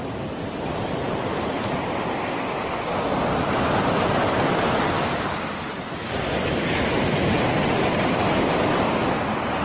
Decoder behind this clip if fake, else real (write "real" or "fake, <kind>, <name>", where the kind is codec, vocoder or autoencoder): real